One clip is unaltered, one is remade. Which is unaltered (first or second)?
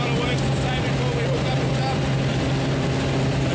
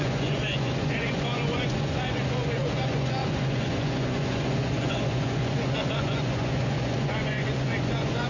first